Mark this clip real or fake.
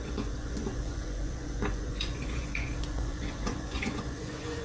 fake